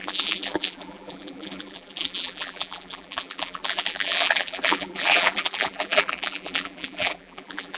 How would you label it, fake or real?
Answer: fake